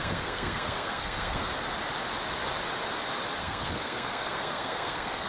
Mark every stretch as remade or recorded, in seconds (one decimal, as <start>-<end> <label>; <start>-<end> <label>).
0.0-1.5 remade; 1.5-3.4 recorded; 3.4-5.3 remade